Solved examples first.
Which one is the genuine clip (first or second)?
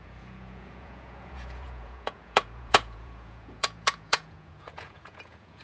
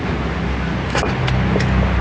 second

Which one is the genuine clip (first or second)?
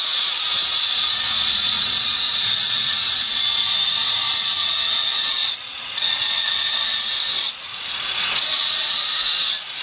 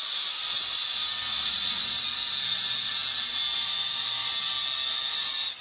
second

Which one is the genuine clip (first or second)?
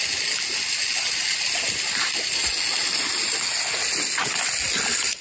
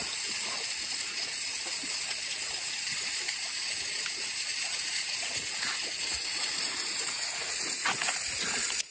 first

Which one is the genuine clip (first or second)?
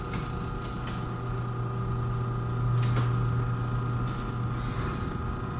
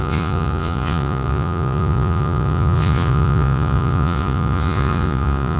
first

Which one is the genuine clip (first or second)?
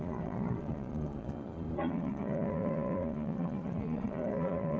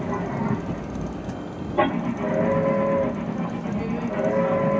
second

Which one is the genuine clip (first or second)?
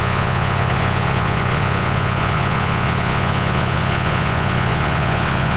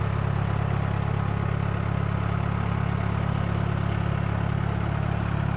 second